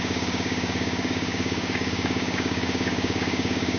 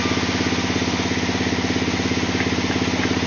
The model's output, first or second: first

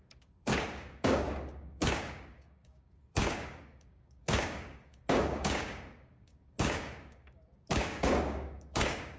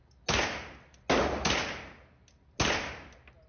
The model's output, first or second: first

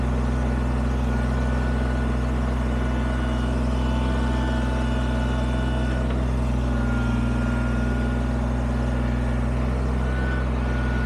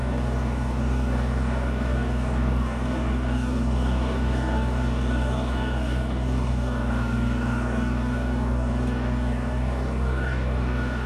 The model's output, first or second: second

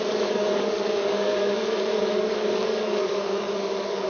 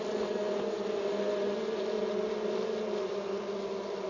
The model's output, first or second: first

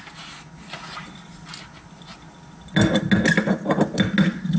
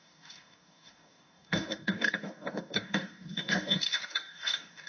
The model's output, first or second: second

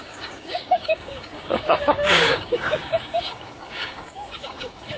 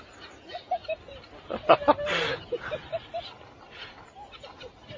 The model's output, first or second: first